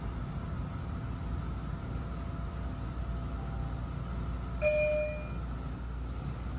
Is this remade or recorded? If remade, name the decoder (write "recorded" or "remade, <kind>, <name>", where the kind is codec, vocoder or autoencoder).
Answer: recorded